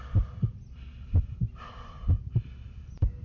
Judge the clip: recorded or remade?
recorded